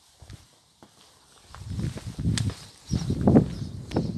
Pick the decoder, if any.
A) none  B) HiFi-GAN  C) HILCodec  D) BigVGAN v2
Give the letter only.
A